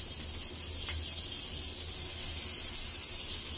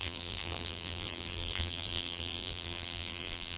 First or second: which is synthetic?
second